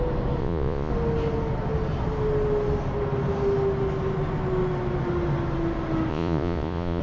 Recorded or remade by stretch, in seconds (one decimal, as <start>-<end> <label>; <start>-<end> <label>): 0.0-0.4 recorded; 0.4-0.9 remade; 0.9-6.1 recorded; 6.1-7.0 remade